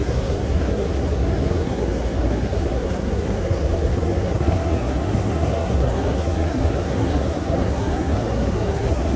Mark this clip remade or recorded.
remade